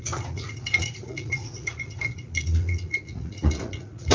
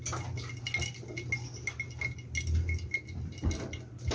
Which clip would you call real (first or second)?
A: second